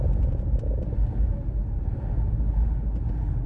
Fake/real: real